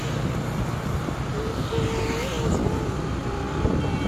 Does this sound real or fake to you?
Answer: real